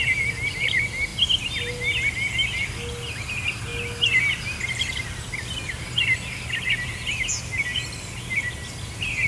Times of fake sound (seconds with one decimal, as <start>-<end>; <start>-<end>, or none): none